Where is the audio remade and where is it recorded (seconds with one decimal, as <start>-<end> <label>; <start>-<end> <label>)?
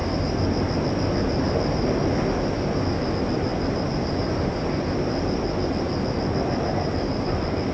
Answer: 0.0-3.1 recorded; 3.1-7.7 remade